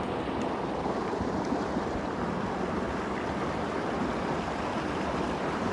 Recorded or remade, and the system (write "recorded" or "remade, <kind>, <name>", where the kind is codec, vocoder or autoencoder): remade, vocoder, BigVGAN v2